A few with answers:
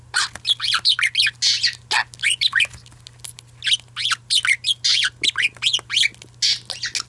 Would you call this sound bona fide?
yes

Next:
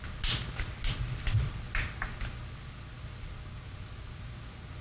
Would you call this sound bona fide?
yes